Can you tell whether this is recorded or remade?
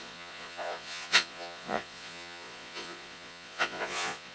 remade